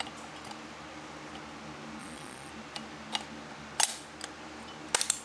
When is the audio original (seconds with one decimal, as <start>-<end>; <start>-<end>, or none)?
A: 0.0-2.0; 2.5-5.2